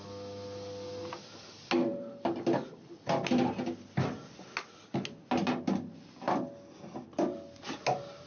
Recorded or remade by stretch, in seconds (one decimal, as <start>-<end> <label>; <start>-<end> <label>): 0.0-8.3 recorded